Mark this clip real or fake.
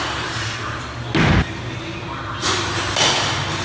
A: real